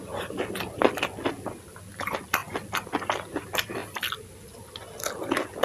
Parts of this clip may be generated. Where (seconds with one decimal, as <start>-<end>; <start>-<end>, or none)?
none